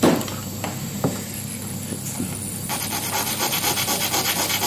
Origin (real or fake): real